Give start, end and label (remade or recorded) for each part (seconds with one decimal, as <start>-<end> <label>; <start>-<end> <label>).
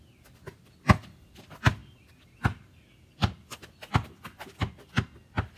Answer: 0.0-5.6 recorded